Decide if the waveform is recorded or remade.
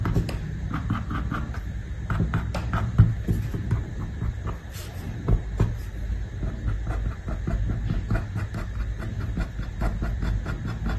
recorded